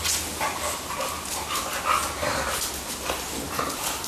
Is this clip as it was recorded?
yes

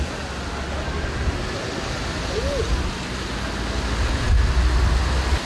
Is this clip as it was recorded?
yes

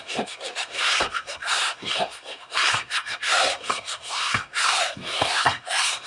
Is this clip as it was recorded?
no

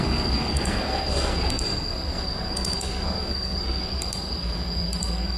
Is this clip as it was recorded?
no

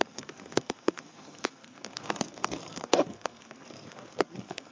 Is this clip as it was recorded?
no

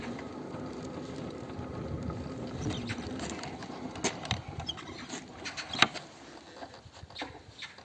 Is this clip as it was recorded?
yes